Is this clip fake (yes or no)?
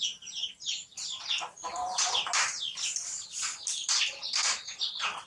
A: no